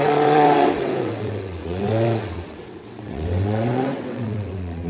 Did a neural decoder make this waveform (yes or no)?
yes